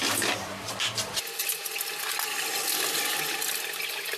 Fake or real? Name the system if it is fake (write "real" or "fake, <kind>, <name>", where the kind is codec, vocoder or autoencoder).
real